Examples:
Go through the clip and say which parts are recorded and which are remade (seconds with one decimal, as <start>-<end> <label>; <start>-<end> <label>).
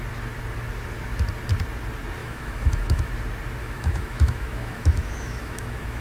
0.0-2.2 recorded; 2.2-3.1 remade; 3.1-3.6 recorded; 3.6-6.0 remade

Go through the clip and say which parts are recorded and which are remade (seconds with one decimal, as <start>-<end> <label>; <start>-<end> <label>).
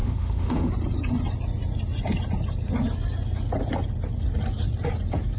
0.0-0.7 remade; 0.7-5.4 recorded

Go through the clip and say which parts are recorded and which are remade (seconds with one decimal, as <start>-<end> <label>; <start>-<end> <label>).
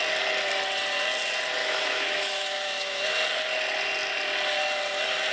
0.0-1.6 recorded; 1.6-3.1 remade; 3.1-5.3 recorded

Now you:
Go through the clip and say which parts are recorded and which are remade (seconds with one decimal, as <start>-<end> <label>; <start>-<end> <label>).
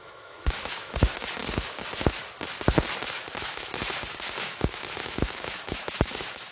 0.0-1.4 remade; 1.4-3.1 recorded; 3.1-3.7 remade; 3.7-4.4 recorded; 4.4-6.5 remade